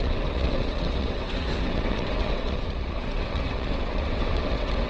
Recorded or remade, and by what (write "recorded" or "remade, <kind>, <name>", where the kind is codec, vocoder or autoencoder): remade, vocoder, WaveNeXt